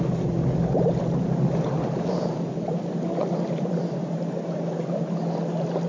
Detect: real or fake real